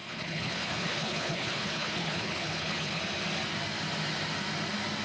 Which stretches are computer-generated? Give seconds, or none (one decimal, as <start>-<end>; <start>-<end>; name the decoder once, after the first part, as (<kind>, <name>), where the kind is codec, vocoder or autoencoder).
0.0-3.0 (codec, HILCodec)